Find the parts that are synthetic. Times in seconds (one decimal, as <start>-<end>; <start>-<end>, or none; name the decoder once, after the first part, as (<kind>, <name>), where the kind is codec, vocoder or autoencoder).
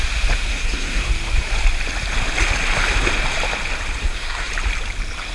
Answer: 0.5-1.1 (codec, SNAC); 4.0-4.5